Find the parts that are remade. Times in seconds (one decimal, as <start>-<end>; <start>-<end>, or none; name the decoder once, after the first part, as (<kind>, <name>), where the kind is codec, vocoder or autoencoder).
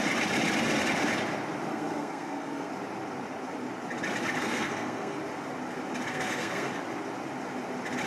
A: 1.7-2.7 (codec, SNAC); 4.4-5.2; 6.1-6.7